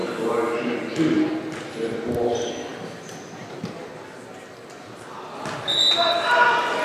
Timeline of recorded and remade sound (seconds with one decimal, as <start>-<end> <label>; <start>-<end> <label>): 0.0-1.3 remade; 1.3-6.8 recorded